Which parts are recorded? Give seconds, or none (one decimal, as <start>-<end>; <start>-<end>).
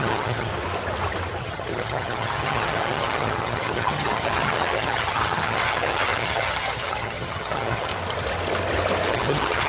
0.5-1.4; 7.9-9.1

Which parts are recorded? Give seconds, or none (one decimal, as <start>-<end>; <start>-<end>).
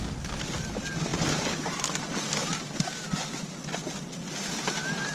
0.0-5.1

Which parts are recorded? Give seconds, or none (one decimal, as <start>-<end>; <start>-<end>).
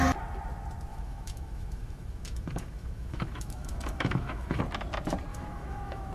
0.0-0.9; 4.6-5.3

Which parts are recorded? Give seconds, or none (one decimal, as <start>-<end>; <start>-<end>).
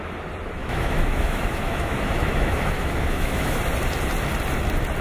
0.0-0.6; 3.6-5.0